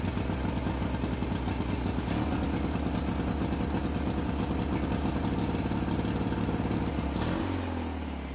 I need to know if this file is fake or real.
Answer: real